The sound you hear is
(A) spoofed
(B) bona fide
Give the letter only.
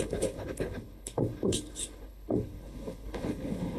A